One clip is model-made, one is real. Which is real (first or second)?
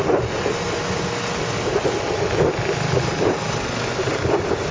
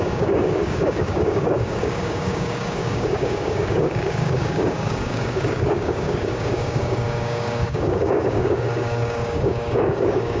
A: first